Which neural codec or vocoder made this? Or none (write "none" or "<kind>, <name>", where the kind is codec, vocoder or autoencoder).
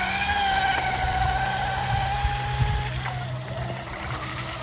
none